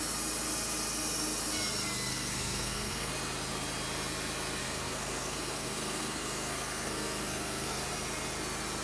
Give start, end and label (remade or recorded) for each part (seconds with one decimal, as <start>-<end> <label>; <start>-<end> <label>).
0.0-2.1 recorded; 2.1-3.1 remade; 3.1-4.6 recorded; 4.6-7.8 remade; 7.8-8.8 recorded

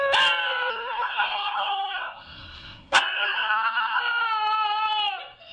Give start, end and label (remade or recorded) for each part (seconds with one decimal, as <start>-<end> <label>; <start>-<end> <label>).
0.0-0.7 recorded; 0.7-4.0 remade; 4.0-5.5 recorded

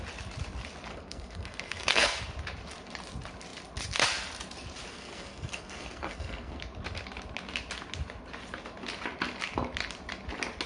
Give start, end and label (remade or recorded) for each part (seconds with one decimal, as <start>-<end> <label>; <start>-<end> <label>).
0.0-0.9 recorded; 0.9-2.2 remade; 2.2-4.9 recorded; 4.9-6.6 remade; 6.6-10.7 recorded

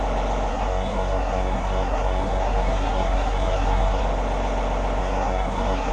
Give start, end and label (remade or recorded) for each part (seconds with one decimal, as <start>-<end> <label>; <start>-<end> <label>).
0.0-0.5 recorded; 0.5-4.0 remade; 4.0-5.0 recorded; 5.0-5.9 remade